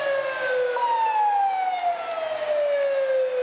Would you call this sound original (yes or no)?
yes